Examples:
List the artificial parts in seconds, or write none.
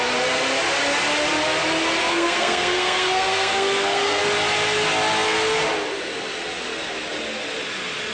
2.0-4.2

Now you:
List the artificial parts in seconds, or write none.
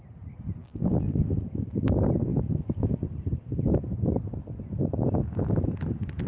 0.6-1.2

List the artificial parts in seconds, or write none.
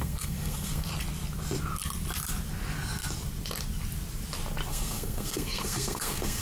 0.0-0.9; 4.7-6.4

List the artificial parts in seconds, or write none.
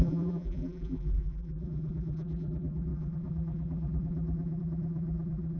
0.0-5.6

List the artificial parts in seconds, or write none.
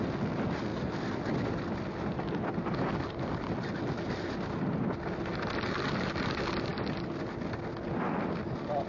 none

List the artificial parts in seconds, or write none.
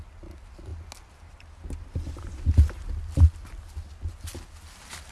none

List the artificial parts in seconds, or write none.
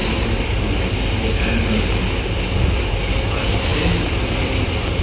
none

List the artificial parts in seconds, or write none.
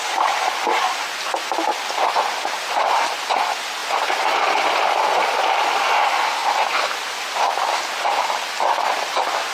none